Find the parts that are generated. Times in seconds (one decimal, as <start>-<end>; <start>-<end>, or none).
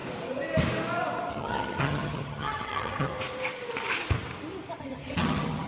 1.3-3.1; 4.8-5.7